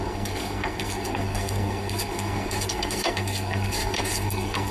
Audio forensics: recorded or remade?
remade